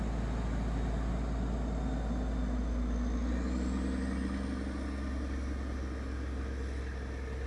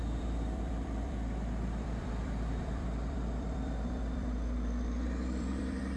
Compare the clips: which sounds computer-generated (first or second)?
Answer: second